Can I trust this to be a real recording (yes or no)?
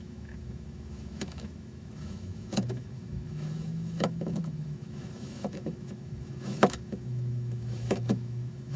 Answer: no